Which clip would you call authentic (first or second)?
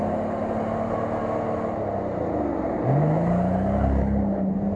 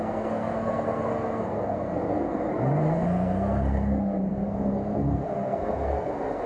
first